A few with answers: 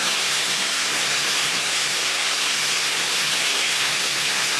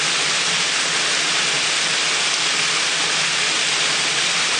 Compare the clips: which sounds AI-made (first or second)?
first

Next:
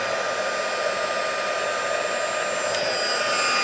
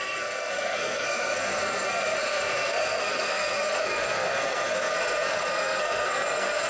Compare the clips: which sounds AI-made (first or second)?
second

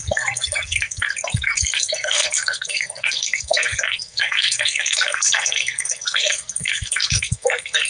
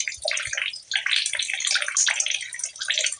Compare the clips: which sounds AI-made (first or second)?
first